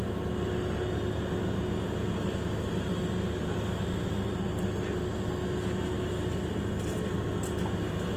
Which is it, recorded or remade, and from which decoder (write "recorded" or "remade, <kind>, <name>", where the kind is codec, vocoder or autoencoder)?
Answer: recorded